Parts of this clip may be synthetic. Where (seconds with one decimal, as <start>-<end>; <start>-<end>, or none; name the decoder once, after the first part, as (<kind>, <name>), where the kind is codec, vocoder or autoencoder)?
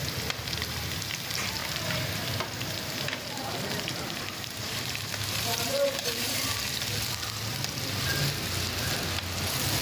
1.6-6.6 (vocoder, BigVGAN v2)